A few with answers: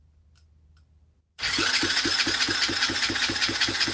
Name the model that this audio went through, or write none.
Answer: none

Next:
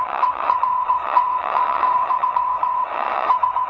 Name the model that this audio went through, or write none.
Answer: vocoder, WaveNeXt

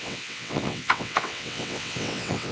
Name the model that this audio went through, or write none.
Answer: vocoder, WaveNeXt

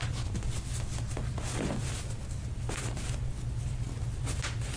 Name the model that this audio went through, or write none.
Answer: none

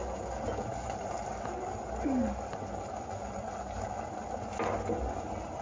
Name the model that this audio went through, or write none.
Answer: none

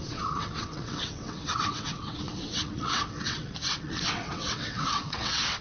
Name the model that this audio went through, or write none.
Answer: vocoder, WaveNeXt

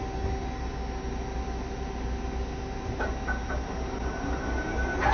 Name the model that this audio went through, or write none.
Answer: none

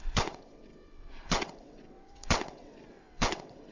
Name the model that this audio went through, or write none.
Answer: vocoder, WaveNeXt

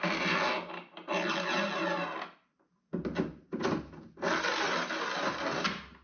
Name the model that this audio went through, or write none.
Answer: none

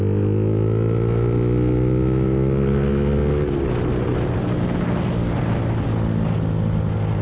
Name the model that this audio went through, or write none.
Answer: none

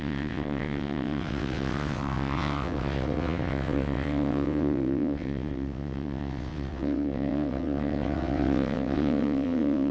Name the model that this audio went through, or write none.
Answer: vocoder, WaveNeXt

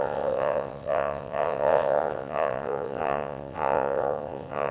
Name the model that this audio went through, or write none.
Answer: vocoder, WaveNeXt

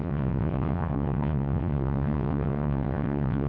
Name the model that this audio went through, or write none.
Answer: vocoder, WaveNeXt